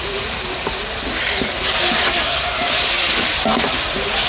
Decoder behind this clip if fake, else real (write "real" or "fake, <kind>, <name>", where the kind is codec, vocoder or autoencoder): real